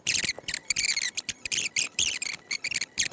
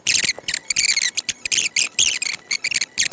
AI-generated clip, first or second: first